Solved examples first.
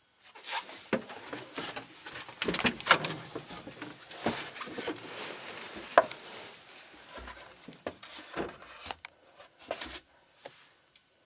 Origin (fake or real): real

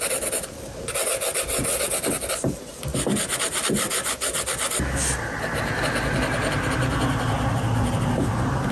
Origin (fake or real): real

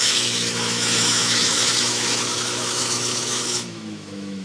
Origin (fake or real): fake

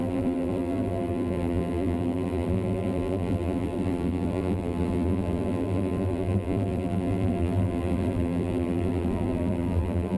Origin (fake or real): fake